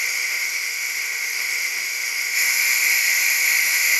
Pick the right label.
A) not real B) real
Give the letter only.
A